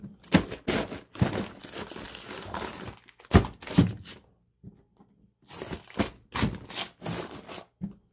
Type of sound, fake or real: real